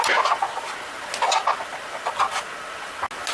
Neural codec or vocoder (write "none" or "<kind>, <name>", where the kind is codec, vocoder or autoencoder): none